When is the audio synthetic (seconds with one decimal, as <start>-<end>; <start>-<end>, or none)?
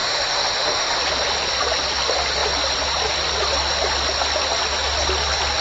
0.0-1.0